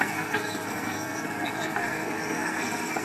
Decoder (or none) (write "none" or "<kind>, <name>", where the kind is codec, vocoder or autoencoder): codec, SNAC